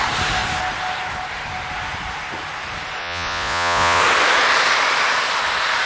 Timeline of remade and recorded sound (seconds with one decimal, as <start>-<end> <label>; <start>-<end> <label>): 0.0-3.0 recorded; 3.0-4.0 remade; 4.0-5.9 recorded

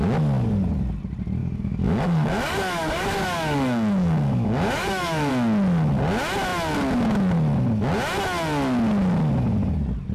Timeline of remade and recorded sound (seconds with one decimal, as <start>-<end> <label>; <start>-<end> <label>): 0.0-1.4 recorded; 1.4-5.3 remade; 5.3-10.1 recorded